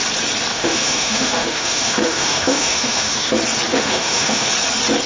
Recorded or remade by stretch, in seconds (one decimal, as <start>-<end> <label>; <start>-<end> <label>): 0.0-0.5 recorded; 0.5-3.3 remade; 3.3-3.7 recorded; 3.7-4.5 remade; 4.5-5.1 recorded